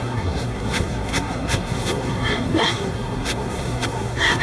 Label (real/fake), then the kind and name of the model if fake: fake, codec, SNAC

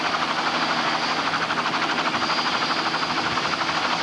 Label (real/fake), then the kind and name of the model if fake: real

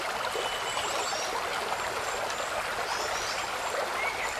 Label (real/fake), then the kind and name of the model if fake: real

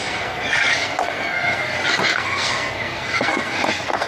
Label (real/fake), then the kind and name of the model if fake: fake, codec, SNAC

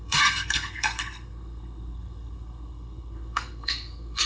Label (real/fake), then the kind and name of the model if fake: fake, codec, SNAC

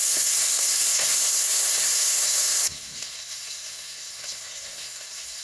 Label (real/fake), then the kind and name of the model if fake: fake, codec, SNAC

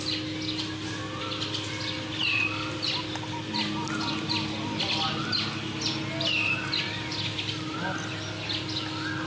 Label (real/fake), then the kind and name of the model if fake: real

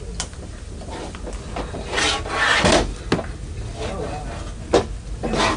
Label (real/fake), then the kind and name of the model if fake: real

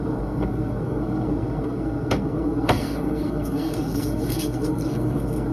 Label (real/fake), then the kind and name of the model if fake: fake, codec, SNAC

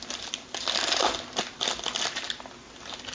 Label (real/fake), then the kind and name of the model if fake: real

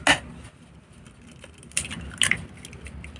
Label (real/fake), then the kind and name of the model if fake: real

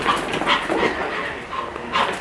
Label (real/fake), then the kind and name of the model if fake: real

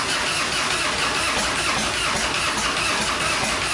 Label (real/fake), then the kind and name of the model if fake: real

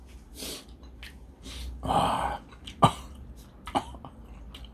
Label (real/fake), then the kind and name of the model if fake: real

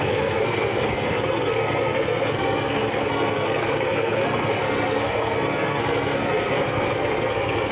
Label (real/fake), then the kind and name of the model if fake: fake, codec, SNAC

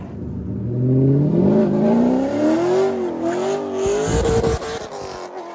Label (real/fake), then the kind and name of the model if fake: real